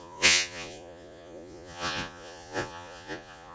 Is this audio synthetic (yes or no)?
yes